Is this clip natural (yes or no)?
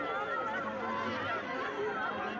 yes